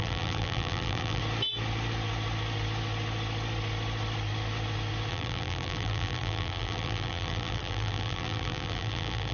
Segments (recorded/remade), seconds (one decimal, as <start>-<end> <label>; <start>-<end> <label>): 0.0-1.2 remade; 1.2-5.1 recorded; 5.1-9.3 remade